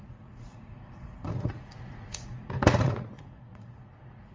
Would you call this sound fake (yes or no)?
yes